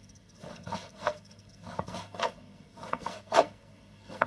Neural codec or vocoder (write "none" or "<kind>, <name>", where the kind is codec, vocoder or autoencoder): codec, SNAC